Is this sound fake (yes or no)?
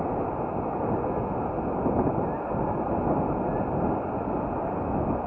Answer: no